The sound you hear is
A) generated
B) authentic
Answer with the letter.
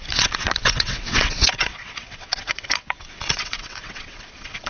A